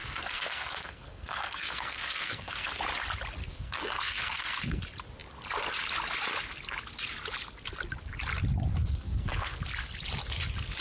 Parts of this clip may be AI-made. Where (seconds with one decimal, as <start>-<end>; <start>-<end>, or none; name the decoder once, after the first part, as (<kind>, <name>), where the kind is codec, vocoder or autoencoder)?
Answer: 0.0-2.8 (codec, SNAC); 3.4-4.8; 8.8-9.6